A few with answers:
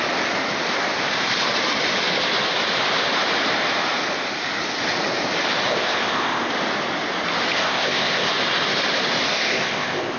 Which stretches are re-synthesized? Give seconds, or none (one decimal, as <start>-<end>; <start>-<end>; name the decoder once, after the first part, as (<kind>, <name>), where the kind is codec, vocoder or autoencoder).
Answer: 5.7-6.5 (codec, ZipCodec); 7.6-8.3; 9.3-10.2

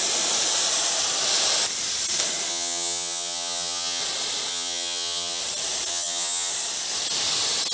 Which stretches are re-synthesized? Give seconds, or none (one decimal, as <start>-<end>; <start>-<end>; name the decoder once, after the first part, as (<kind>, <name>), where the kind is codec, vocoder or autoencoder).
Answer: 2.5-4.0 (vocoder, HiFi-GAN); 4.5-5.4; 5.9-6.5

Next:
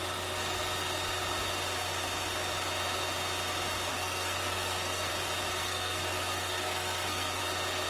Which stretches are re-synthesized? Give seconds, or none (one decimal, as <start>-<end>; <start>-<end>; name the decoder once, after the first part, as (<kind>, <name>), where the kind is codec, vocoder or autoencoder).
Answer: 3.9-5.1 (codec, SNAC); 5.6-7.4

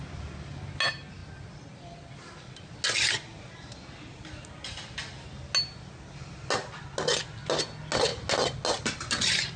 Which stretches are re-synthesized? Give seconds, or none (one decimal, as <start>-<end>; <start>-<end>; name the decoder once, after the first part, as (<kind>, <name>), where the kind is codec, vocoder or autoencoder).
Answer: none

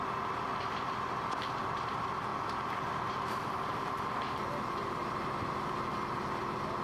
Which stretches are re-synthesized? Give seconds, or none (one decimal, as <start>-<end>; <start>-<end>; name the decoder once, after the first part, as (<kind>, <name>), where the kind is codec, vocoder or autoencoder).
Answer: none